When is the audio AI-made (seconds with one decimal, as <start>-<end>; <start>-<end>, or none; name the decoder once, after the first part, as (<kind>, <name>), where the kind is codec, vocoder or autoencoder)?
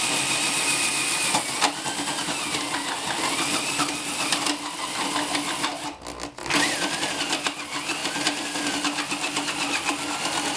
6.4-7.1 (vocoder, BigVGAN v2)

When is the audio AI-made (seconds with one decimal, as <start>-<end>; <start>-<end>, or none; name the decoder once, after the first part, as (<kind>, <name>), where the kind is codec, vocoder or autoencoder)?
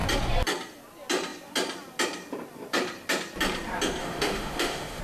4.0-5.0 (autoencoder, DAC-VAE)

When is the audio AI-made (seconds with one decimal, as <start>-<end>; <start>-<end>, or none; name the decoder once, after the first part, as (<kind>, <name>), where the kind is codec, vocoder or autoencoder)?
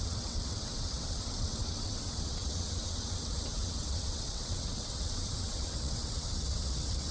0.0-7.1 (vocoder, WaveNeXt)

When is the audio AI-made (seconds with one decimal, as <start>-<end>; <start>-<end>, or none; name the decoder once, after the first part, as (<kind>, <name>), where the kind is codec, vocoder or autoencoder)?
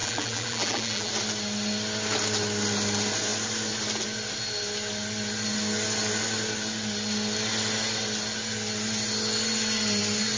0.0-1.1 (vocoder, BigVGAN v2)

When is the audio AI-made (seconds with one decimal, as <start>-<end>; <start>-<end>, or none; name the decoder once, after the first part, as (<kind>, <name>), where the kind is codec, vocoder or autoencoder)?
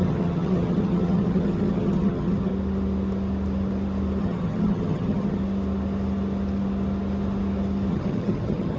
0.0-2.5 (vocoder, HiFi-GAN); 4.2-5.4; 7.9-8.8